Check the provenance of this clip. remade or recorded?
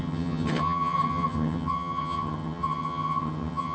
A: remade